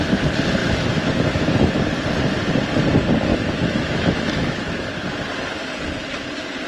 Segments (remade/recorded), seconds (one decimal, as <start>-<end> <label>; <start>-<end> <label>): 0.0-0.6 recorded; 0.6-1.7 remade; 1.7-3.3 recorded; 3.3-4.9 remade; 4.9-6.7 recorded